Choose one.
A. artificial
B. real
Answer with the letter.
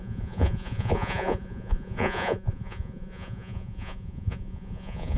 A